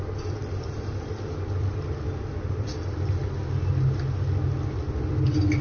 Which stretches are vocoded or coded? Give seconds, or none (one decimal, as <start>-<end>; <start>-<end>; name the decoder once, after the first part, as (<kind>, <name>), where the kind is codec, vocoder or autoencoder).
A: 0.4-3.1 (vocoder, BigVGAN v2)